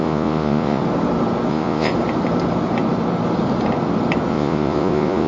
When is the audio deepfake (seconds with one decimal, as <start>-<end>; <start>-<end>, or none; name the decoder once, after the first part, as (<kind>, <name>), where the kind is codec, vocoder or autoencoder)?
0.0-0.8 (vocoder, Vocos); 1.5-1.9; 4.3-5.3